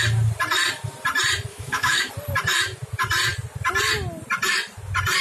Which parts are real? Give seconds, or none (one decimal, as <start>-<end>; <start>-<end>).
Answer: 0.0-1.5; 2.1-5.2